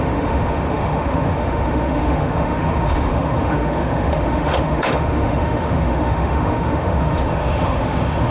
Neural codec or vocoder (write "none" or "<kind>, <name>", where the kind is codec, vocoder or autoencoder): autoencoder, DAC-VAE